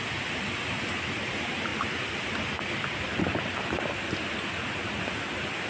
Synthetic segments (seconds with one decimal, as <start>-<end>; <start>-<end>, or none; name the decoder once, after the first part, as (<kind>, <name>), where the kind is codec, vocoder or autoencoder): none